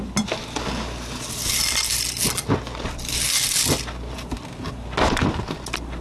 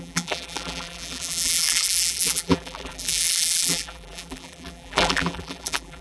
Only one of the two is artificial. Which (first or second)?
second